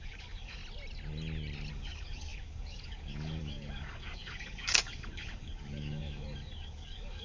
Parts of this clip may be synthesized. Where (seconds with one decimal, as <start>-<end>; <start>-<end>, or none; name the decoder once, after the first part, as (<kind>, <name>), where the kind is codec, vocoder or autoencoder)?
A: 0.0-0.6 (codec, DAC); 1.7-7.2